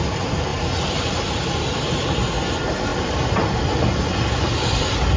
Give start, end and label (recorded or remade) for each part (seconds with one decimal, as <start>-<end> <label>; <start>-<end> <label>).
0.0-5.2 recorded